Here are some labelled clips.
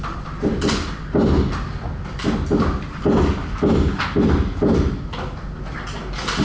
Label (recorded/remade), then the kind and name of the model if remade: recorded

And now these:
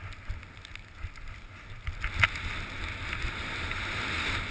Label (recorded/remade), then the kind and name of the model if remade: recorded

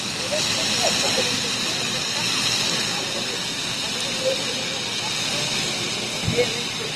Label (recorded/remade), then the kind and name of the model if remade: recorded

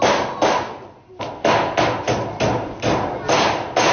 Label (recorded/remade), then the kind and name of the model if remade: recorded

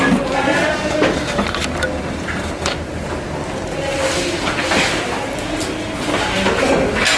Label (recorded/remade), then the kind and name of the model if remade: recorded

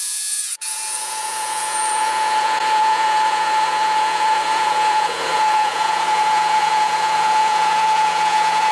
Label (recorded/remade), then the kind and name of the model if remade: remade, vocoder, Vocos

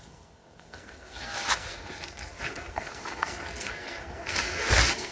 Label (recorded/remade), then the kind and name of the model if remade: remade, codec, SNAC